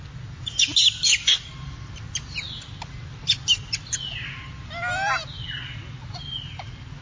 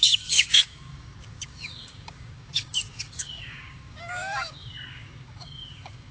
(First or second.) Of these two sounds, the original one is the first